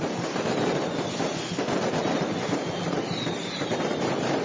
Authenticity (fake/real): fake